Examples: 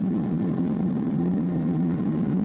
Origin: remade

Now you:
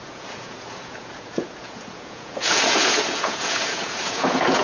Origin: remade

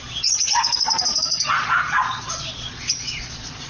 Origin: remade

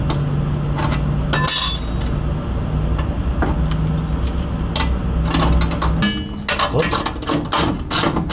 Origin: recorded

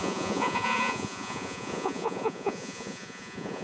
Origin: remade